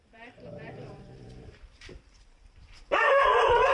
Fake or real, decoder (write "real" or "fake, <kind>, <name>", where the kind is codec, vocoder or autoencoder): fake, vocoder, BigVGAN v2